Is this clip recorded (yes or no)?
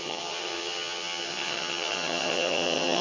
no